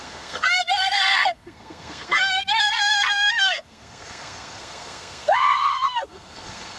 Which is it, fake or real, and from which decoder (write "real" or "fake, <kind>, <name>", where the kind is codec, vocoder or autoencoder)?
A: fake, codec, SNAC